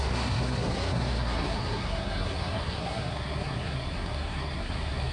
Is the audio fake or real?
fake